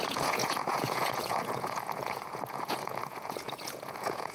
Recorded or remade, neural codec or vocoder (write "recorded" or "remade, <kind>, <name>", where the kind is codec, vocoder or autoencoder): remade, vocoder, Vocos